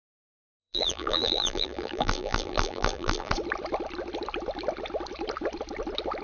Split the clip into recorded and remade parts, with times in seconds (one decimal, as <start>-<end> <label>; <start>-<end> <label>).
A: 0.0-0.6 recorded; 0.6-3.3 remade; 3.3-6.2 recorded